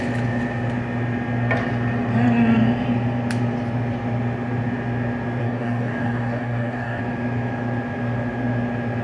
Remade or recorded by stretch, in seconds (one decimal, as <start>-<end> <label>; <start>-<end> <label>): 0.0-5.4 recorded; 5.4-7.0 remade; 7.0-9.0 recorded